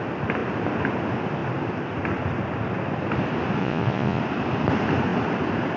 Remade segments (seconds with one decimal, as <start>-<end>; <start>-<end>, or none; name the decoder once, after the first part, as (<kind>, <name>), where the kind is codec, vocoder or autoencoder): 3.6-4.2 (vocoder, Vocos)